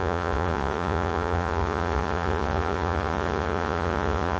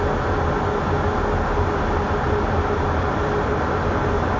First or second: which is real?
second